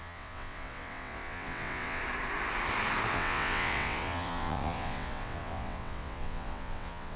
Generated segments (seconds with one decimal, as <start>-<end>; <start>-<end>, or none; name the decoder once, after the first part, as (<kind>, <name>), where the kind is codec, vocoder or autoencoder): 0.0-2.0 (vocoder, WaveNeXt); 3.1-7.2